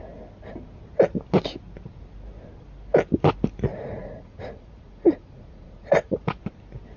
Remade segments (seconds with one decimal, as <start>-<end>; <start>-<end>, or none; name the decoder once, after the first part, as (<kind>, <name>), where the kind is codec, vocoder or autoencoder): 3.7-6.4 (vocoder, Vocos)